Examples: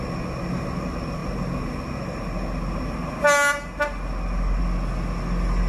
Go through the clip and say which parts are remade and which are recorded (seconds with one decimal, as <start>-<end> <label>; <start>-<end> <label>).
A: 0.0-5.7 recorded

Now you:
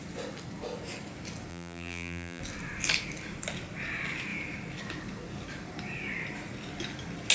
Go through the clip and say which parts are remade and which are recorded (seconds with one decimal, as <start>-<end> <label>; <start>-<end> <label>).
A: 0.0-1.5 recorded; 1.5-2.4 remade; 2.4-7.3 recorded

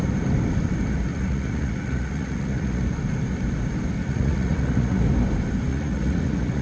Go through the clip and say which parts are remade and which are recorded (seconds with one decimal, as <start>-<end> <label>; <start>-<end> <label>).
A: 0.0-1.1 recorded; 1.1-2.8 remade; 2.8-4.0 recorded; 4.0-5.0 remade; 5.0-5.7 recorded; 5.7-6.6 remade